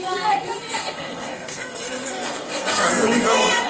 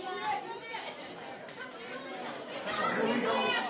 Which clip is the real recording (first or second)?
second